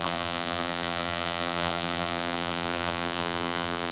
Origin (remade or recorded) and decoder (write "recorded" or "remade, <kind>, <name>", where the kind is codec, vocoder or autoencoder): remade, vocoder, BigVGAN v2